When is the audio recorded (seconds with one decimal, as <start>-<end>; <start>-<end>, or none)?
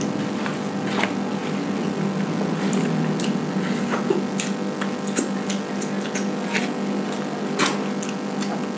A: 0.0-8.8